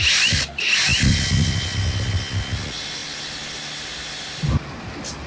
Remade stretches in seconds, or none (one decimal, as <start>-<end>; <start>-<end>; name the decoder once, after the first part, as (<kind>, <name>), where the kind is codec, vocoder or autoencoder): none